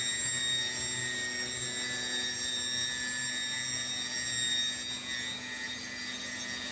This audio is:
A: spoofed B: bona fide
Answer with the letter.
B